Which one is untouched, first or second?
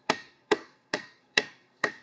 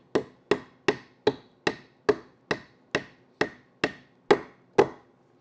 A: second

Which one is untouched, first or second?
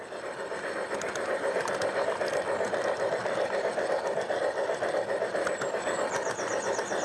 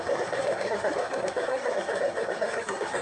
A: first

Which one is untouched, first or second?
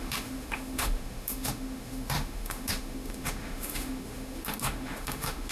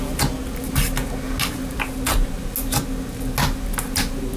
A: second